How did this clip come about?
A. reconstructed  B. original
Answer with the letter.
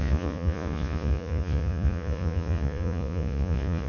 A